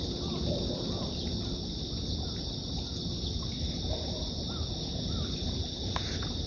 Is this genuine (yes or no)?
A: yes